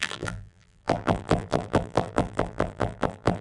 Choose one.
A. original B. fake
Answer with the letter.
B